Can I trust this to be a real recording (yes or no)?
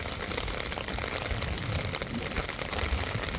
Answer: yes